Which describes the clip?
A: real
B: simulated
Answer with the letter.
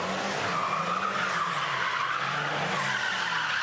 A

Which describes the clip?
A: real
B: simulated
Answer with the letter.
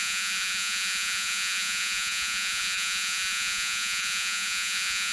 B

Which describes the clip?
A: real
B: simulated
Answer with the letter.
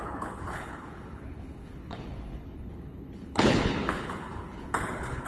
B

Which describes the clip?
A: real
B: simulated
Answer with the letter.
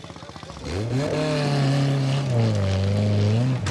A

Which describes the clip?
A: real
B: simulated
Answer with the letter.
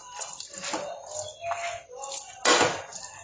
A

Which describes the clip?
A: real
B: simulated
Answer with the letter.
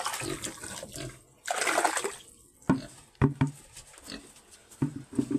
A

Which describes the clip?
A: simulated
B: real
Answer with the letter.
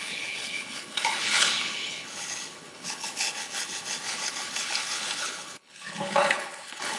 A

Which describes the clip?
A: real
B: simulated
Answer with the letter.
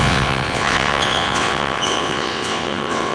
B